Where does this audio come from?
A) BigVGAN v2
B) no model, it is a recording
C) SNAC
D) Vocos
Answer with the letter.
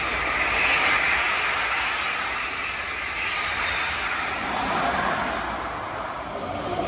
B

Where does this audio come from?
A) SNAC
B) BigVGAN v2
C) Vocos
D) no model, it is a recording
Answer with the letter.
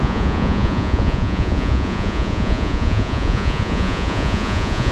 C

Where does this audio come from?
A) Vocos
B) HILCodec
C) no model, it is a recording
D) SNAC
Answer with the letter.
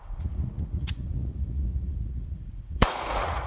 A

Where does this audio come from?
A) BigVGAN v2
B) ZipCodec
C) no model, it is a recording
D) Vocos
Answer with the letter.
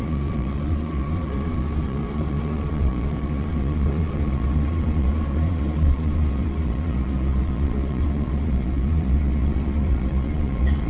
D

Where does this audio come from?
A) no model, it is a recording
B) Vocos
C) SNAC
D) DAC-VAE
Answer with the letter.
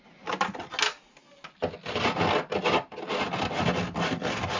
A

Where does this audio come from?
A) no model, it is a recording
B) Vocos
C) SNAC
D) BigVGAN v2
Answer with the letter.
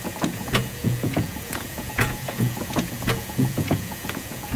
B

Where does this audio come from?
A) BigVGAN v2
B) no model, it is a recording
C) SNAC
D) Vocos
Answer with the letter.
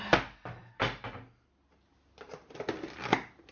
B